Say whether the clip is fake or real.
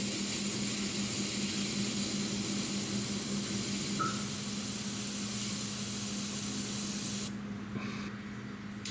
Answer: real